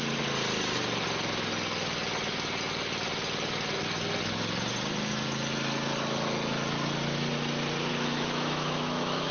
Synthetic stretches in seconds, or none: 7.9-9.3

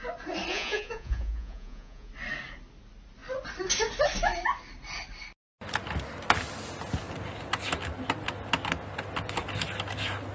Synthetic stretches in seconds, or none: 0.5-2.1

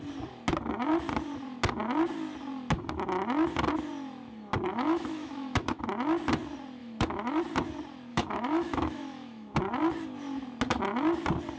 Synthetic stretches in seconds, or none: 4.7-5.8; 6.8-7.4; 8.1-9.6

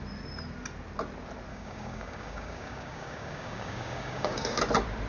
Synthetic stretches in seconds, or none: 1.5-4.6

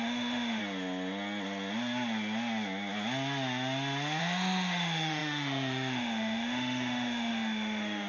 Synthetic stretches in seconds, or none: 0.0-0.6; 4.2-8.1

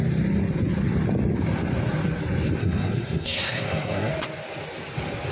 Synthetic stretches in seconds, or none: 2.6-4.1

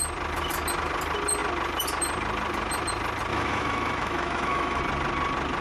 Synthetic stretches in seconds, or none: 3.3-4.8